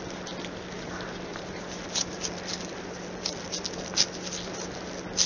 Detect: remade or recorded recorded